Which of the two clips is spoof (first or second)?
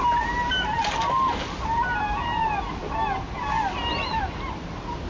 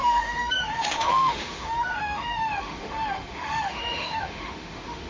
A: second